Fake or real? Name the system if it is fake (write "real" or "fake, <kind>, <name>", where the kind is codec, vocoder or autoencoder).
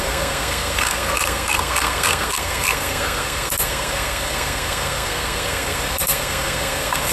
fake, codec, SNAC